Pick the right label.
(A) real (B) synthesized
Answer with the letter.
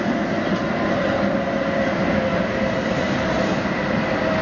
A